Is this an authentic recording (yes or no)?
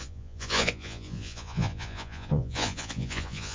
no